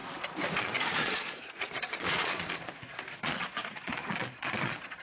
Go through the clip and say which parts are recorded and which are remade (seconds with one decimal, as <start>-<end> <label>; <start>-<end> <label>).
0.0-0.6 recorded; 0.6-5.0 remade